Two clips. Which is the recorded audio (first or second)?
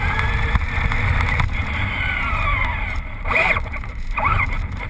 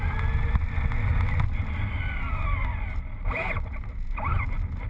second